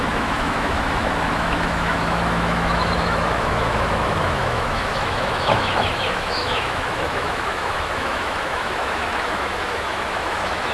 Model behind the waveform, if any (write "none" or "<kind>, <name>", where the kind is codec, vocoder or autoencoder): autoencoder, DAC-VAE